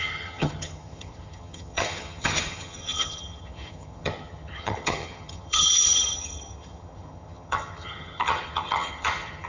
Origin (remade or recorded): remade